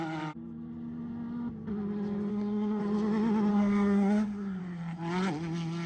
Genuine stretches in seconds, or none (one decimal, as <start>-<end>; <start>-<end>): 0.0-2.3; 2.8-3.5; 4.6-5.9